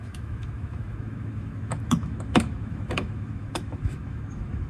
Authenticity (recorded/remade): remade